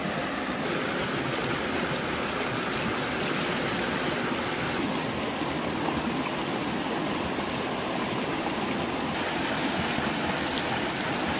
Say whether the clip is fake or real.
real